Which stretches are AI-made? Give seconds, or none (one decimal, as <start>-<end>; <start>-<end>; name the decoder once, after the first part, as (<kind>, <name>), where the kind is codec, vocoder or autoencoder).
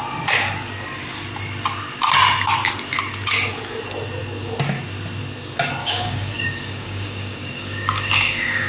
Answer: 5.8-8.7 (codec, DAC)